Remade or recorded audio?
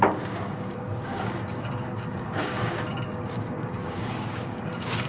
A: remade